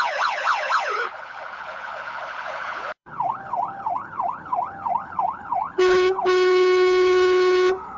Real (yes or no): no